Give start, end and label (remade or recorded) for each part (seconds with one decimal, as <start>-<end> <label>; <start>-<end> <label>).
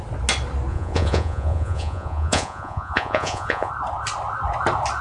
0.0-0.7 recorded; 0.7-3.7 remade; 3.7-5.0 recorded